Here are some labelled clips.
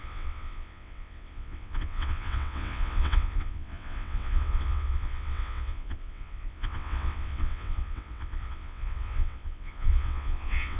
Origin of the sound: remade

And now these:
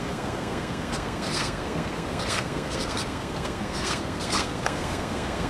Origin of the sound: remade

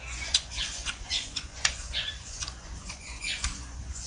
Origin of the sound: remade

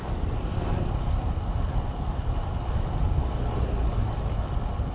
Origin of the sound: recorded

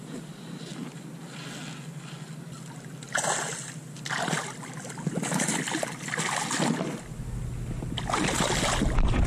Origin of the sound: recorded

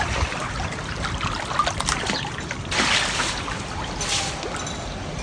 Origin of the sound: recorded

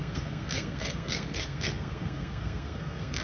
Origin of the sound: remade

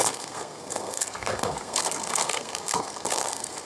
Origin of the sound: remade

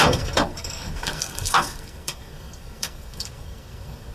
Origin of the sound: remade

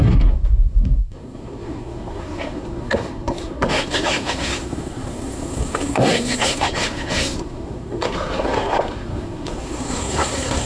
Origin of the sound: remade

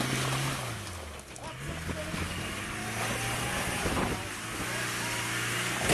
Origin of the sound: recorded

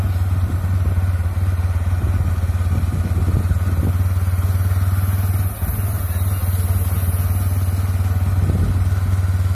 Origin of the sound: recorded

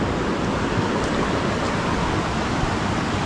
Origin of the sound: recorded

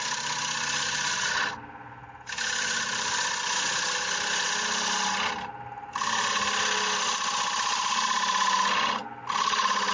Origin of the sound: recorded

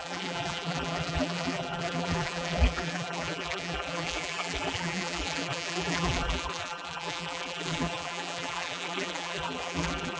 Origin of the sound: remade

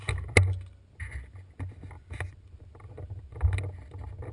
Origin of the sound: recorded